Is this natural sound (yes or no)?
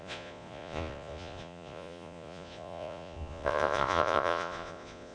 no